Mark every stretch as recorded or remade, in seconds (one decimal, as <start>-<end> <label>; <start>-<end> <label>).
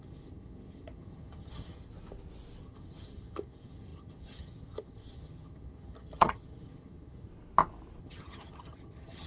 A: 0.0-1.9 remade; 1.9-2.6 recorded; 2.6-7.3 remade; 7.3-8.0 recorded; 8.0-9.3 remade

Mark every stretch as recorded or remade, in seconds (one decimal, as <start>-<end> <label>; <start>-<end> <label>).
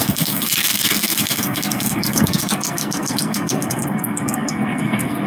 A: 0.0-5.3 remade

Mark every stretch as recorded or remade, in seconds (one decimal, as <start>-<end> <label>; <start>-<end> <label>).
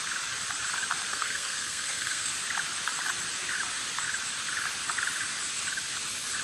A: 0.0-1.1 recorded; 1.1-2.3 remade; 2.3-6.4 recorded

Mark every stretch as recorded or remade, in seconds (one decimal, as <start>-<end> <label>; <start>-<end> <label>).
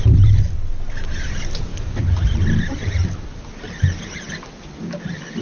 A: 0.0-5.4 recorded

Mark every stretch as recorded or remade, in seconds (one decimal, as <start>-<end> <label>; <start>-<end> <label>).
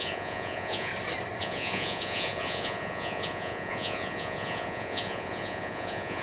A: 0.0-0.9 remade; 0.9-1.4 recorded; 1.4-6.2 remade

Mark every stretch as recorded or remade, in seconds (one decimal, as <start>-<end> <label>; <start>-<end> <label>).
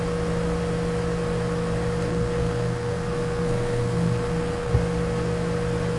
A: 0.0-2.1 recorded; 2.1-4.7 remade; 4.7-6.0 recorded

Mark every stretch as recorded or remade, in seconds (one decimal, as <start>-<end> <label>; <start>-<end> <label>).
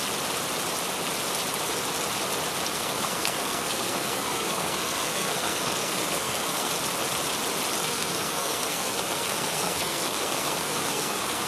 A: 0.0-2.7 recorded; 2.7-6.7 remade; 6.7-7.8 recorded; 7.8-11.5 remade